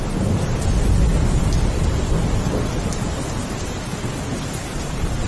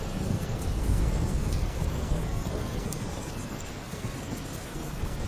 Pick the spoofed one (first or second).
second